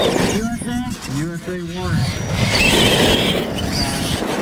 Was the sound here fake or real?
real